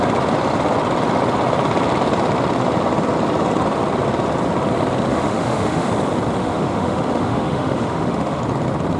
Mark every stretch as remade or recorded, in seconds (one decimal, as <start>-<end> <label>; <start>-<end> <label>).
0.0-5.1 recorded; 5.1-5.9 remade; 5.9-6.4 recorded; 6.4-8.4 remade; 8.4-9.0 recorded